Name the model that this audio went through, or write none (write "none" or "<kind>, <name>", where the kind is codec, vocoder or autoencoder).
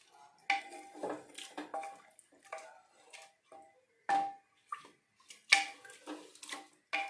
none